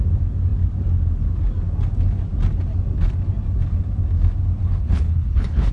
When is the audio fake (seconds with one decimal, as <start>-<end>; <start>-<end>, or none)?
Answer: 4.6-5.7